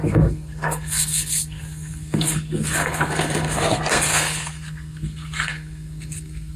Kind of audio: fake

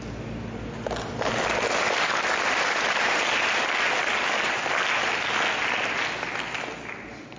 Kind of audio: real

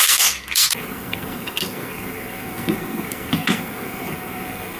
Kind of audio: fake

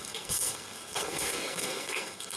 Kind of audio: fake